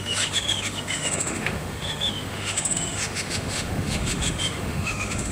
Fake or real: fake